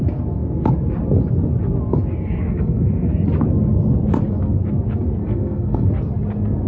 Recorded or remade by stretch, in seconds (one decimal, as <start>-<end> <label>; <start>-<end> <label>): 0.0-2.4 recorded; 2.4-3.1 remade; 3.1-5.2 recorded; 5.2-5.9 remade; 5.9-6.7 recorded

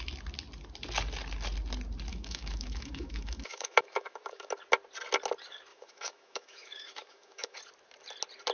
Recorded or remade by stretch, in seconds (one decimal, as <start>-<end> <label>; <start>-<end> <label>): 0.0-2.1 recorded; 2.1-4.5 remade; 4.5-5.7 recorded; 5.7-7.6 remade; 7.6-8.5 recorded

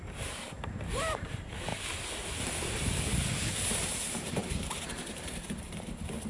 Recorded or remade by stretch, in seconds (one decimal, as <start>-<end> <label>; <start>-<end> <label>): 0.0-1.7 remade; 1.7-3.5 recorded; 3.5-6.3 remade